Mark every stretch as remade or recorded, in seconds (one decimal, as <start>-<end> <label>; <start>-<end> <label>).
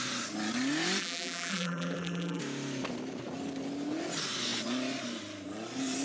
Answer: 0.0-1.0 recorded; 1.0-2.4 remade; 2.4-6.0 recorded